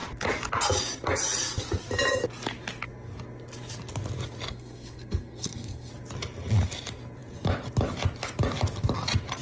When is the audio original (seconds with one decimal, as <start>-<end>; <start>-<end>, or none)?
0.0-4.5; 5.9-9.4